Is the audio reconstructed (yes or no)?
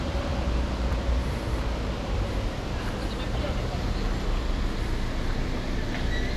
no